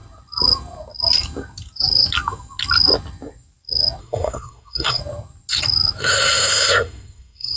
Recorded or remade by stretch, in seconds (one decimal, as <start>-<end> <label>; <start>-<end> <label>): 0.0-4.0 recorded; 4.0-5.0 remade; 5.0-6.0 recorded; 6.0-7.6 remade